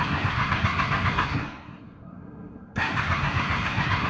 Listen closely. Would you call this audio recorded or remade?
remade